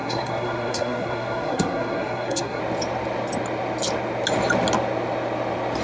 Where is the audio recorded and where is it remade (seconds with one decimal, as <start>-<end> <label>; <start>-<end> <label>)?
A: 0.0-2.6 remade; 2.6-5.8 recorded